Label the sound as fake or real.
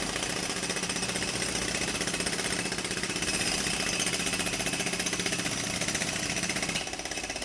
real